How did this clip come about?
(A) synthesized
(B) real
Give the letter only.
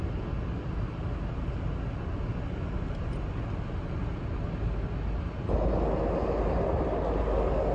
B